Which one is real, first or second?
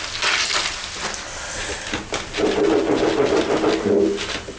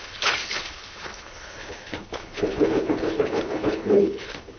first